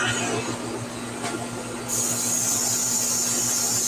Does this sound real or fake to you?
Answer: real